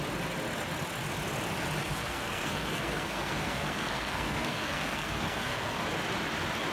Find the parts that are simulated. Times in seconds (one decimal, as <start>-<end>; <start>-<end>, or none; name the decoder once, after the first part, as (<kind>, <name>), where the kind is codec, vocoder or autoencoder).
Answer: 1.8-5.8 (codec, SNAC)